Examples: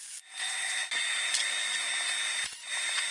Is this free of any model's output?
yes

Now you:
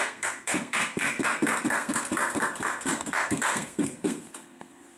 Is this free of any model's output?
no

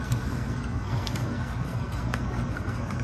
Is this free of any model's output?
no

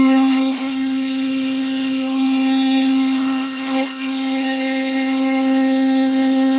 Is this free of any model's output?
no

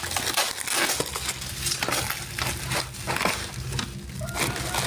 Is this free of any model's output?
yes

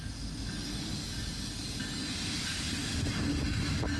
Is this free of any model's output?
yes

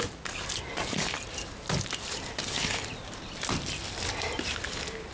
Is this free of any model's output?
yes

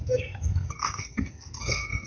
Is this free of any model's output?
no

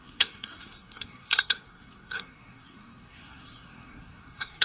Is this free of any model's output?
no